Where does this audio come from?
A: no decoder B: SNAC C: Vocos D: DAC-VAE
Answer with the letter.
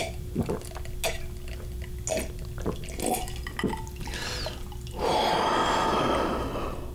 A